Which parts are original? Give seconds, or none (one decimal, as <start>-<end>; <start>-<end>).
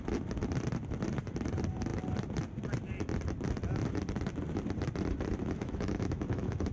0.0-5.4